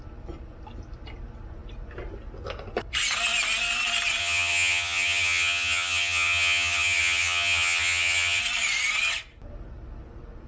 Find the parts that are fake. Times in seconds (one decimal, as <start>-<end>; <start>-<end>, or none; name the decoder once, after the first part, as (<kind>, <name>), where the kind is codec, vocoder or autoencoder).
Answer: 4.2-8.4 (vocoder, HiFi-GAN)